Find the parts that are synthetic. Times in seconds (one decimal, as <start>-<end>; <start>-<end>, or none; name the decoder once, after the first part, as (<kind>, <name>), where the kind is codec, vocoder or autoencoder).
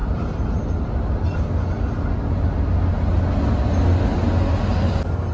none